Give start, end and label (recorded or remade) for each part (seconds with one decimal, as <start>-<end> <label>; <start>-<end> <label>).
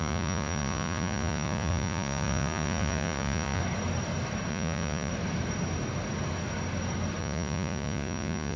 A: 0.0-3.6 remade; 3.6-4.5 recorded; 4.5-5.1 remade; 5.1-7.2 recorded; 7.2-8.6 remade